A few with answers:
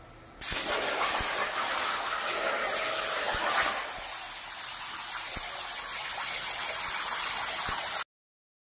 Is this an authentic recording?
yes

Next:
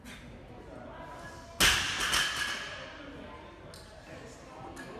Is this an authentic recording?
yes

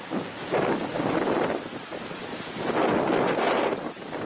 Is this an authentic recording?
yes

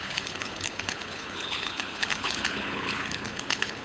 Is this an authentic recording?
no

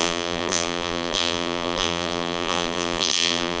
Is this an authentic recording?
no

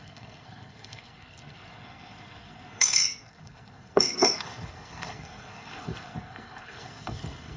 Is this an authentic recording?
no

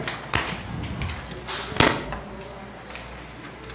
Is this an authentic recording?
yes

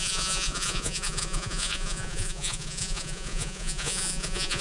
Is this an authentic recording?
no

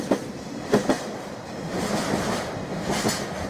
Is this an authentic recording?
yes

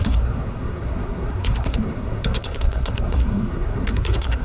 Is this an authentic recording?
no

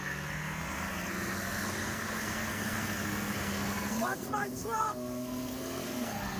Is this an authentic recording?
no